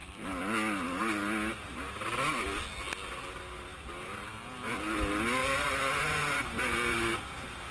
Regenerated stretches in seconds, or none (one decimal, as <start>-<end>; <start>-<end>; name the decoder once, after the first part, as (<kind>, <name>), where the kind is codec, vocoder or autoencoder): 5.4-7.2 (vocoder, Vocos)